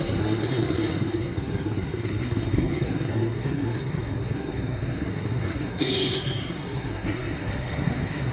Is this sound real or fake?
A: fake